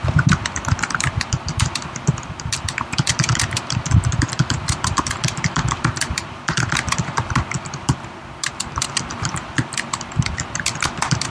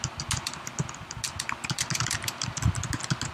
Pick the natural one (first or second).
second